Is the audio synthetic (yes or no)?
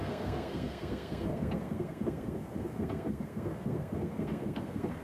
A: yes